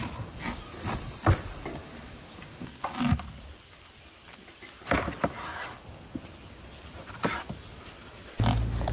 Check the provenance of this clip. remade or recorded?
recorded